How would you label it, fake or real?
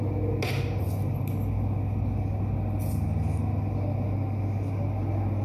real